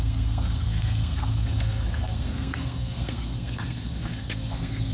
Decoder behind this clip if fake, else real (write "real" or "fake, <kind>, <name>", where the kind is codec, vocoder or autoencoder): fake, codec, SNAC